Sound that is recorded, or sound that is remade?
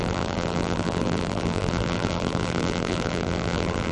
remade